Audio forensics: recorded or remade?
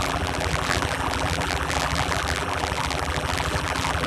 remade